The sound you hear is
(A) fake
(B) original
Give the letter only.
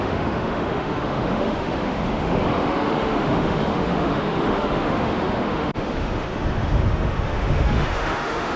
A